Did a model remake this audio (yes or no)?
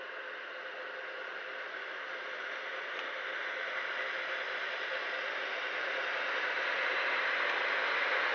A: no